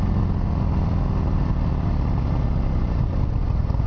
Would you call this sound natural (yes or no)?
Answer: yes